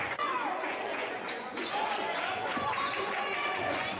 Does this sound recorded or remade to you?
remade